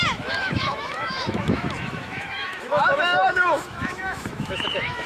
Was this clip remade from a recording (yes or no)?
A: yes